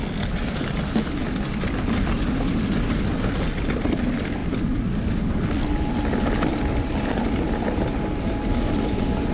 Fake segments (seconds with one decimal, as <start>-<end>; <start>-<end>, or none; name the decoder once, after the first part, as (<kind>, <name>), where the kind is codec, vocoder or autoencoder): none